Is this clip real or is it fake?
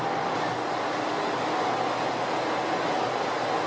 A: real